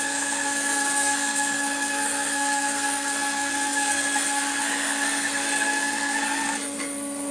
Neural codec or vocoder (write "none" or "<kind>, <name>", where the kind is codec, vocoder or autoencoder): codec, SNAC